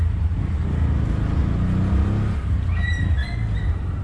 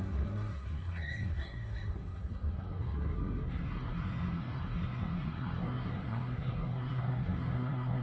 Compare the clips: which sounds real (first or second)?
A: first